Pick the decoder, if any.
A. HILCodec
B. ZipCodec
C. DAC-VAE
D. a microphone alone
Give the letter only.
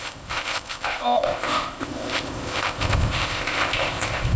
B